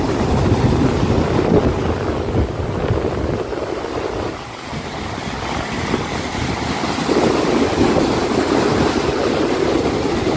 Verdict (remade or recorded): recorded